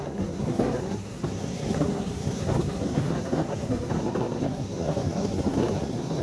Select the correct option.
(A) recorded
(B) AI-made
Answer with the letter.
B